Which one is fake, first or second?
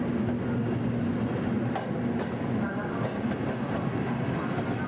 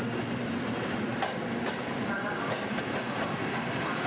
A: second